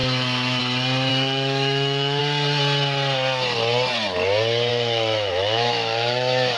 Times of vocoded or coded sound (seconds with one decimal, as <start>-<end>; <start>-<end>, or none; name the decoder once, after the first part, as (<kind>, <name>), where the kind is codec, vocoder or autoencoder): 0.0-0.6 (autoencoder, DAC-VAE); 1.1-2.2; 4.7-6.6